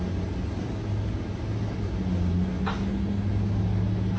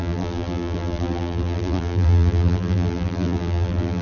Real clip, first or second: first